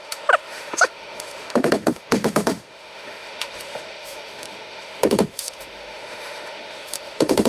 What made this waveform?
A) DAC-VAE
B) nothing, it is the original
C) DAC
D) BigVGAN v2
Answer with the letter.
A